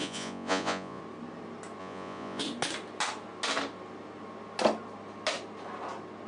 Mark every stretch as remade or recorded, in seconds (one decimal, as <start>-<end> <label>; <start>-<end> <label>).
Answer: 0.0-1.0 remade; 1.0-1.8 recorded; 1.8-2.4 remade; 2.4-6.3 recorded